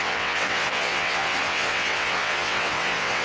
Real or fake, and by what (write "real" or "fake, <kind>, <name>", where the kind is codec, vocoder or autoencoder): fake, vocoder, WaveNeXt